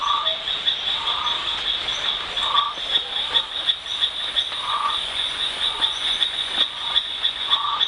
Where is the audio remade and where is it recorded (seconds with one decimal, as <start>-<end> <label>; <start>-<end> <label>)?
0.0-4.7 recorded; 4.7-7.9 remade